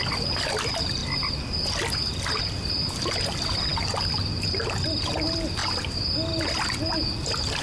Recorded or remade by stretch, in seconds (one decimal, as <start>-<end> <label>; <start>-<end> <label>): 0.0-7.6 recorded